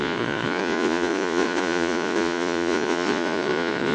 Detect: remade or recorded remade